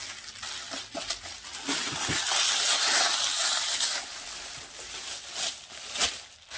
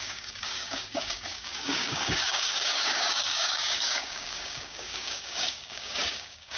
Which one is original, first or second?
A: first